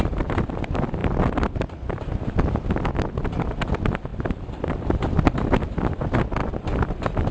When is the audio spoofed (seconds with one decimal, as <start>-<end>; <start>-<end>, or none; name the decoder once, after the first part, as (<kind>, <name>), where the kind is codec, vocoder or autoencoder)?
1.0-1.9 (vocoder, BigVGAN v2); 4.1-6.0